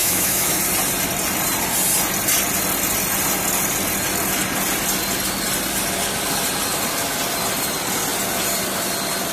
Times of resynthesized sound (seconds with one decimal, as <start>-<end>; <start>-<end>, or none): 0.0-0.6